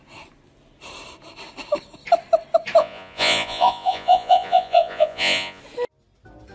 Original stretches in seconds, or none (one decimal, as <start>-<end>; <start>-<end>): 0.0-2.8; 5.6-6.5